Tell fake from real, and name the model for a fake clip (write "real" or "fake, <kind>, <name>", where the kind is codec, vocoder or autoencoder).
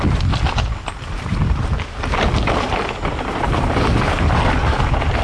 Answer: real